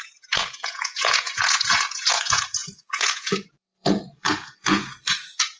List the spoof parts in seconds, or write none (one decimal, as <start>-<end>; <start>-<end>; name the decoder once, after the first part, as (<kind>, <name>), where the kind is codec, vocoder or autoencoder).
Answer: 0.0-5.6 (vocoder, Vocos)